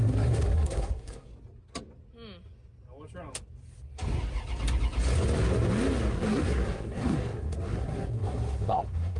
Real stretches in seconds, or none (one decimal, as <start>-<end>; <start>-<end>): 1.3-6.1